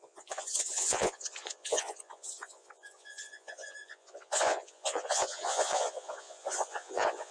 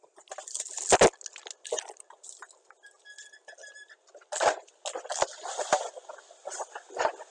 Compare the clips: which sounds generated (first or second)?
first